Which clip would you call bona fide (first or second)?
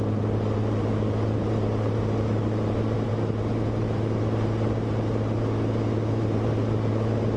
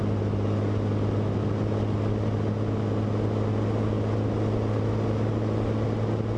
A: second